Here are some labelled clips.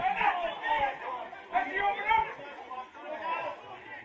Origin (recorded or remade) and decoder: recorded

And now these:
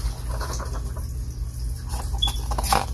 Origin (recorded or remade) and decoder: recorded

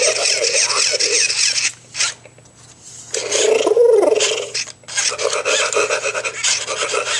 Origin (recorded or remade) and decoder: recorded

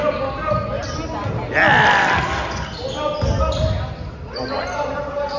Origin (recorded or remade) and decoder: recorded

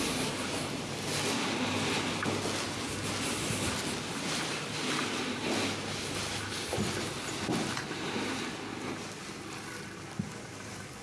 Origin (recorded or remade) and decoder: recorded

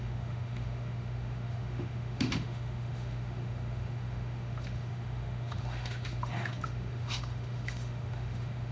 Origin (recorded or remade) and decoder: remade, autoencoder, DAC-VAE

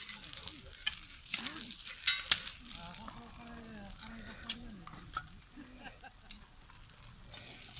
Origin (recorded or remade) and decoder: recorded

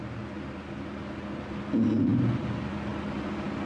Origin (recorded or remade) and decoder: recorded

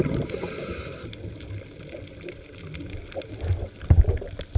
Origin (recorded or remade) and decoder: recorded